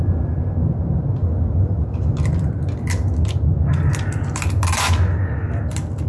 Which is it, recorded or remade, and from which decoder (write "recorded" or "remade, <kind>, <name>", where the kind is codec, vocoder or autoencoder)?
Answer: recorded